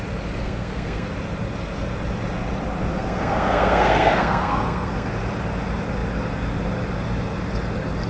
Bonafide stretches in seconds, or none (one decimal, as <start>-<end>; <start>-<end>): 0.0-0.4; 1.1-2.9; 5.1-8.1